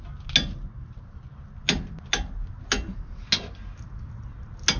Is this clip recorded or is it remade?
recorded